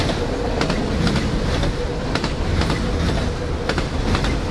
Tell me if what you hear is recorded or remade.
recorded